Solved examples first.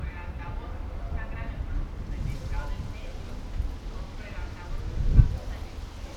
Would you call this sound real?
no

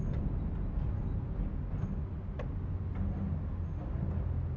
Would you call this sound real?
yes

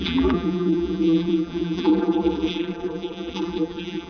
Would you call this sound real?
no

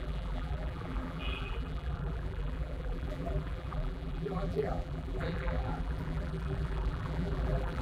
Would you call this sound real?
no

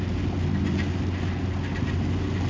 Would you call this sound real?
yes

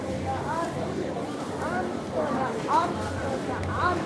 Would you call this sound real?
no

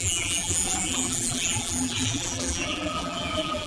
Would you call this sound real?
no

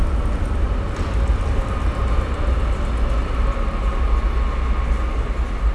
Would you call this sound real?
yes